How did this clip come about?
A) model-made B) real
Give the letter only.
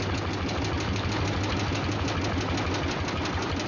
B